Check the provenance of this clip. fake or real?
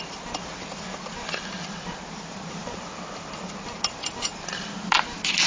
real